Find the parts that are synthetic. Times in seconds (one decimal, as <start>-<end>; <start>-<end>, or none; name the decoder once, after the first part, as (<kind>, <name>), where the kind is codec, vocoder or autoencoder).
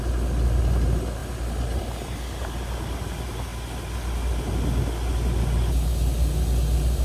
none